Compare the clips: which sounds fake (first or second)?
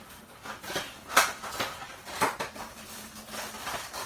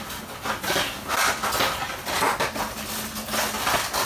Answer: first